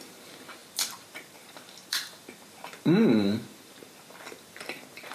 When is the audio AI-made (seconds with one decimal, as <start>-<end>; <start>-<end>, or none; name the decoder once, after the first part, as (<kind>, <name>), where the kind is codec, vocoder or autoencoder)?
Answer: 0.0-5.1 (vocoder, BigVGAN v2)